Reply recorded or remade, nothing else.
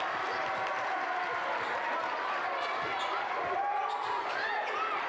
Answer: recorded